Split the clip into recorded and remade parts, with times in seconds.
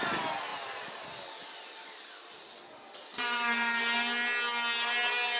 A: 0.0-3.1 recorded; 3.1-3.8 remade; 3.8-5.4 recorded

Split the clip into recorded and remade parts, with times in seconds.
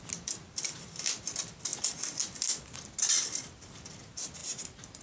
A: 0.0-4.4 recorded; 4.4-5.0 remade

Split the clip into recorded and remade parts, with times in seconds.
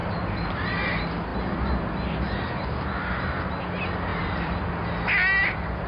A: 0.0-4.1 recorded; 4.1-4.7 remade; 4.7-5.4 recorded; 5.4-5.9 remade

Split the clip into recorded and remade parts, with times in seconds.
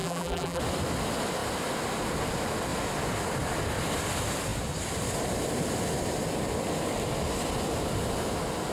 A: 0.0-0.6 remade; 0.6-8.7 recorded